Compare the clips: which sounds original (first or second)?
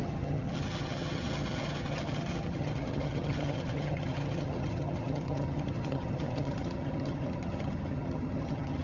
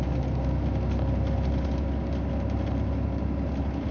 second